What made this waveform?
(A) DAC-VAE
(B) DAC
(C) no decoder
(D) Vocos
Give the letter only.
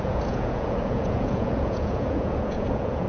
D